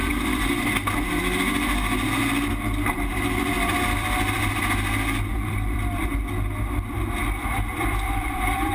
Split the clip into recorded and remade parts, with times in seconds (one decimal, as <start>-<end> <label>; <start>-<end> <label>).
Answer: 0.0-0.5 remade; 0.5-3.1 recorded; 3.1-4.6 remade; 4.6-5.3 recorded; 5.3-6.0 remade; 6.0-7.7 recorded; 7.7-8.7 remade